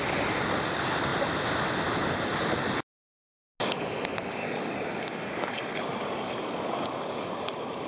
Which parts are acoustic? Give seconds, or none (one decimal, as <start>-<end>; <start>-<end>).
0.0-4.4; 7.4-7.9